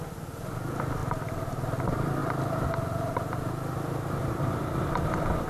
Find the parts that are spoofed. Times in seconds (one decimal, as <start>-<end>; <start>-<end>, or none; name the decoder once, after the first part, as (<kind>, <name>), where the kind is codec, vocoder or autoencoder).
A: none